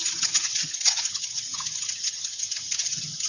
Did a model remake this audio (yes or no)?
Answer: yes